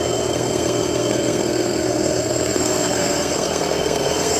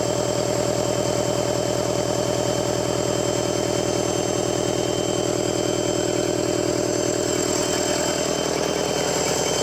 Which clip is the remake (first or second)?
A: first